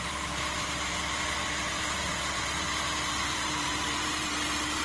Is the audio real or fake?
fake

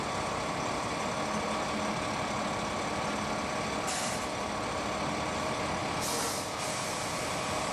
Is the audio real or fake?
real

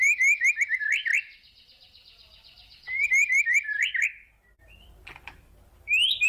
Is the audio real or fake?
fake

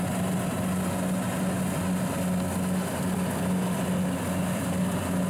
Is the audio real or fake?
real